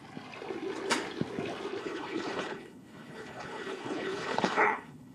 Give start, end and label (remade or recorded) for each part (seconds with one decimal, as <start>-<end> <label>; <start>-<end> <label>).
0.0-1.8 recorded; 1.8-5.1 remade